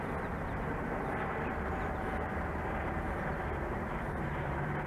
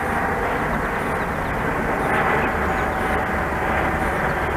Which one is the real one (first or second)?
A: second